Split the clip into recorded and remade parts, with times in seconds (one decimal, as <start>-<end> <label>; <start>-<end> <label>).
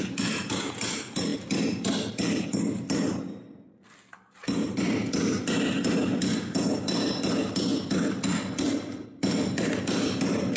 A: 0.0-10.6 recorded